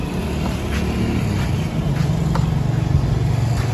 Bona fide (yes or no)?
yes